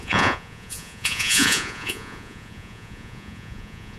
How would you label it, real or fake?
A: fake